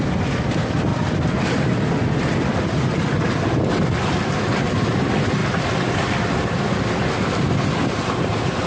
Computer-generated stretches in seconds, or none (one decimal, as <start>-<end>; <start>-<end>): none